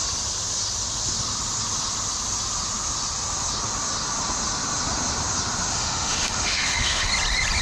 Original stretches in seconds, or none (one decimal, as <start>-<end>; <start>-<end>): 0.0-5.7; 7.1-7.6